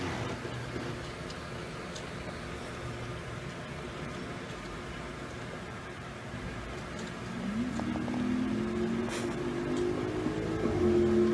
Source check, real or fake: real